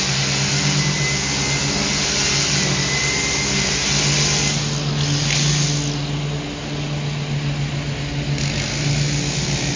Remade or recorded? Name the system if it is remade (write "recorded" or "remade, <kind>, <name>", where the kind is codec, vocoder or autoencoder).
recorded